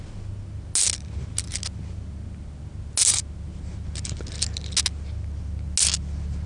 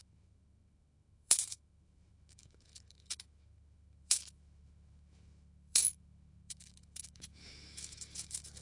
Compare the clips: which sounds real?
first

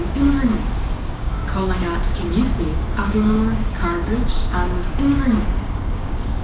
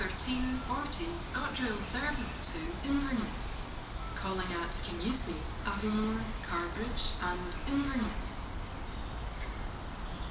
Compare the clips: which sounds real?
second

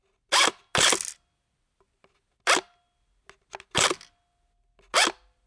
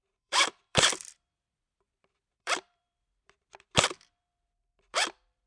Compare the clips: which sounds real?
first